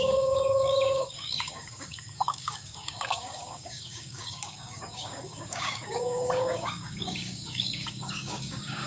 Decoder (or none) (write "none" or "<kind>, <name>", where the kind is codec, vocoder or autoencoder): codec, DAC